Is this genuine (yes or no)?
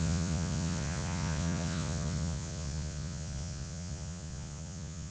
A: no